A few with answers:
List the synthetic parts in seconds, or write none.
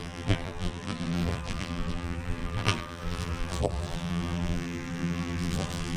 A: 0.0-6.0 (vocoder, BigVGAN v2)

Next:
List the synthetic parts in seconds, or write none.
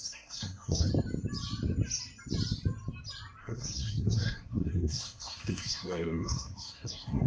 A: 0.0-0.9 (codec, SNAC); 3.4-7.3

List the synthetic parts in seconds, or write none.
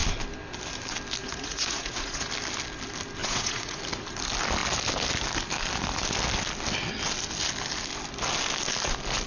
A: 1.2-2.3 (vocoder, Vocos); 3.2-3.8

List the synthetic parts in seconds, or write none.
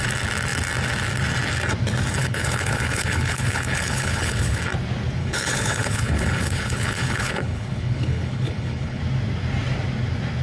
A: 2.2-4.6 (codec, HILCodec); 5.2-9.0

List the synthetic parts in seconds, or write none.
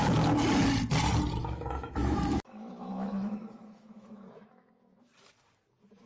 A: 1.4-5.1 (autoencoder, DAC-VAE)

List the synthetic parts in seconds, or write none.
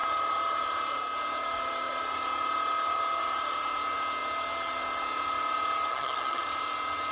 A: 5.9-6.4 (vocoder, HiFi-GAN)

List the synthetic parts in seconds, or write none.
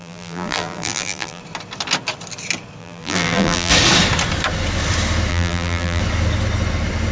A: 0.0-1.4 (vocoder, BigVGAN v2); 2.8-3.7; 5.3-6.0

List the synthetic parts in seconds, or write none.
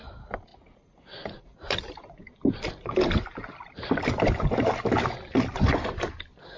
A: 0.5-4.2 (vocoder, BigVGAN v2)